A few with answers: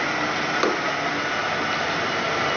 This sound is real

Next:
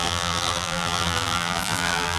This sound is fake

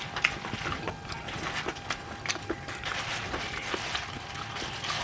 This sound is real